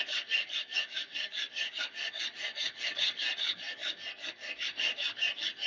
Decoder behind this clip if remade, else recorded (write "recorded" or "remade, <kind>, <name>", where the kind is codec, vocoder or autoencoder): remade, codec, DAC